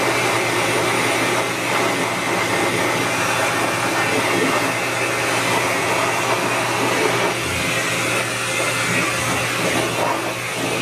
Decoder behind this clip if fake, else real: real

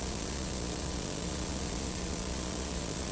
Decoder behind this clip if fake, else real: fake, vocoder, Vocos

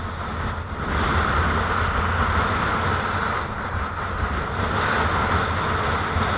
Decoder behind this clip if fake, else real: real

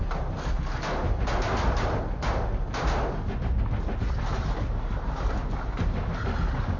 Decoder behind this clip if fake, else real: real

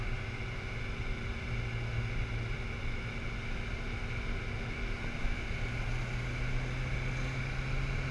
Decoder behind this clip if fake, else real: real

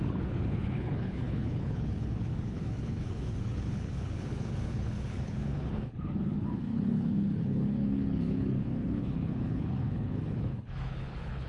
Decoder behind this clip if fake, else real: fake, codec, HILCodec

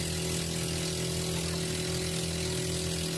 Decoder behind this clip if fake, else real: real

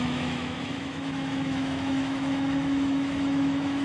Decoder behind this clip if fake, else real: fake, autoencoder, DAC-VAE